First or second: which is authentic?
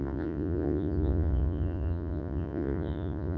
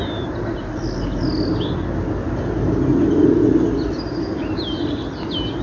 second